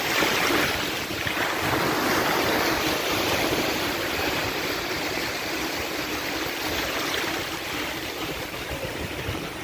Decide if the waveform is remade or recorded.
remade